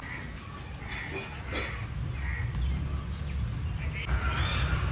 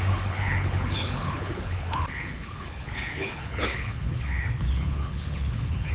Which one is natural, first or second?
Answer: first